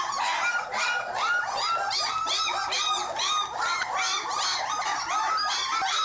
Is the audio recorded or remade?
recorded